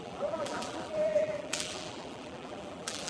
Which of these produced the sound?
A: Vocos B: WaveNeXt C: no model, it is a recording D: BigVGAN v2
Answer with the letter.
D